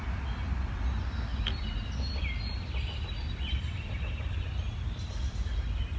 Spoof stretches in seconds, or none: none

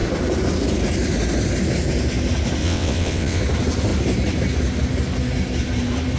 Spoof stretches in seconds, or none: 2.6-3.4 (vocoder, WaveNeXt)